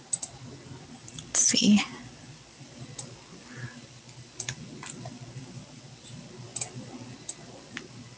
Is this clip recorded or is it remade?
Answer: recorded